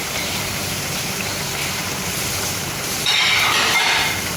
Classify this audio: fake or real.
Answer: fake